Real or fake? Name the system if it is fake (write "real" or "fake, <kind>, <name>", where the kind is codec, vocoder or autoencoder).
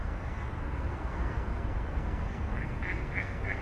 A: fake, codec, SNAC